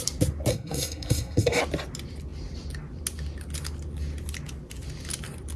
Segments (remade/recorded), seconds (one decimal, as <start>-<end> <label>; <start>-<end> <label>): 0.0-0.5 recorded; 0.5-1.6 remade; 1.6-5.6 recorded